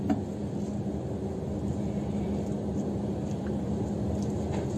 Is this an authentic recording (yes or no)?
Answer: yes